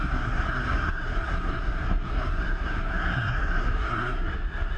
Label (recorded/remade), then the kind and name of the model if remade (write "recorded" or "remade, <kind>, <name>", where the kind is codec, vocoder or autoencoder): remade, codec, SNAC